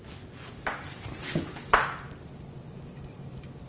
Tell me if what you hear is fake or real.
real